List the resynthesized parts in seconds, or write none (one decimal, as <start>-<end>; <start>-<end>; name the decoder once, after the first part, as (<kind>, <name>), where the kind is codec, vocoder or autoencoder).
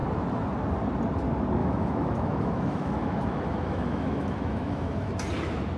1.6-5.1 (autoencoder, DAC-VAE)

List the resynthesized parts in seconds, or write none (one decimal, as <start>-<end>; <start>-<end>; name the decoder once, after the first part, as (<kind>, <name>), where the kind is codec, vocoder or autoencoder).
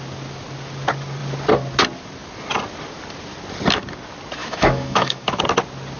4.4-5.4 (autoencoder, DAC-VAE)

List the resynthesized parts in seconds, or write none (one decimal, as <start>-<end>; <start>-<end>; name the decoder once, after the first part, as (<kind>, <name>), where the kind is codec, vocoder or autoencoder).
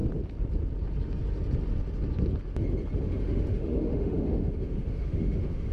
3.0-5.7 (autoencoder, DAC-VAE)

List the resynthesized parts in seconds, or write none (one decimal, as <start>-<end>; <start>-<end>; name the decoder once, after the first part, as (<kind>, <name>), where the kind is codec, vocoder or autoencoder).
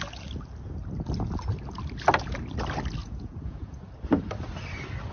3.0-3.9 (vocoder, Vocos)